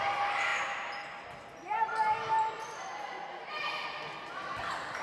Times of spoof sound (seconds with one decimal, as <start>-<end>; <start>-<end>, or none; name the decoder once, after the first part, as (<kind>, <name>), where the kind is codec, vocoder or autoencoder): none